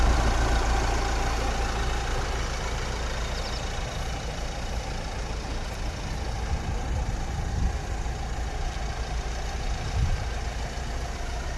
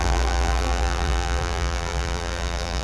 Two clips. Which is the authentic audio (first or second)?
first